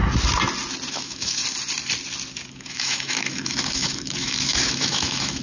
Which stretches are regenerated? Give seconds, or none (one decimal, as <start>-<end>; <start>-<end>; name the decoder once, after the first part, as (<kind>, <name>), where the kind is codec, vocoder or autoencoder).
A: 0.9-1.4 (autoencoder, DAC-VAE); 2.5-5.4